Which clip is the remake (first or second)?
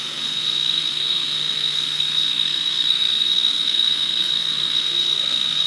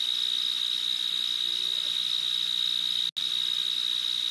first